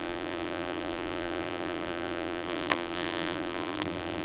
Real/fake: fake